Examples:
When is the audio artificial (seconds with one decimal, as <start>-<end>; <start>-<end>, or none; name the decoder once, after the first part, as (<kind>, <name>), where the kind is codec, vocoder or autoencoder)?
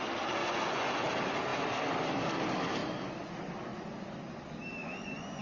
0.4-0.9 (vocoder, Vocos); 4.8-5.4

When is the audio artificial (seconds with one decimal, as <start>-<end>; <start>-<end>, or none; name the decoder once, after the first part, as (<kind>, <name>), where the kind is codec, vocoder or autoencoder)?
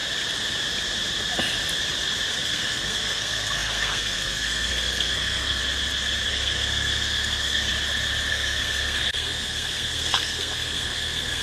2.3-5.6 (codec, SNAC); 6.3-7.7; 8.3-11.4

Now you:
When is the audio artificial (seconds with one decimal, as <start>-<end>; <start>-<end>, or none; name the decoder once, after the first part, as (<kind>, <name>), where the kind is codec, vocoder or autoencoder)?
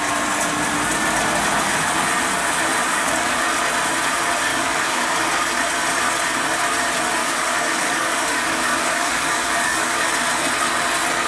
2.8-3.4 (codec, DAC); 4.5-5.2; 7.2-10.1